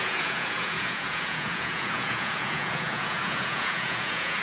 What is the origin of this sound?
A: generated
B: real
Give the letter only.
A